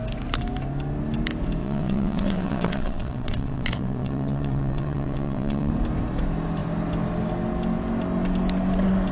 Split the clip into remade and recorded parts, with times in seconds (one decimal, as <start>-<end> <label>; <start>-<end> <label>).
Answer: 0.0-1.6 recorded; 1.6-5.7 remade; 5.7-9.1 recorded